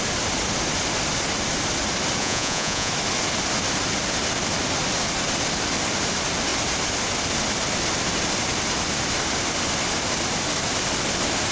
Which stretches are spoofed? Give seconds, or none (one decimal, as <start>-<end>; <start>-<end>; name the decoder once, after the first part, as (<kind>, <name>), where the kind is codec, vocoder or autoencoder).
2.2-2.9 (vocoder, Vocos)